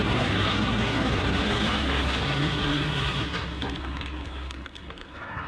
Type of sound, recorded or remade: remade